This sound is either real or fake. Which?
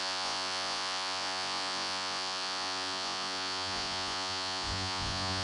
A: fake